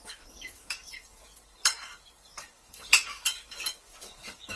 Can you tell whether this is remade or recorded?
remade